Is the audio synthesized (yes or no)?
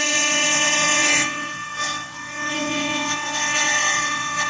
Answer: yes